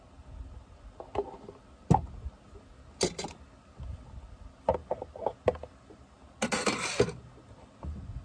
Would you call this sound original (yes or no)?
yes